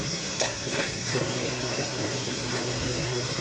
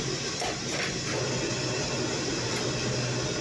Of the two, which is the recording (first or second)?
second